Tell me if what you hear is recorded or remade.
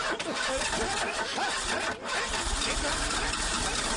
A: recorded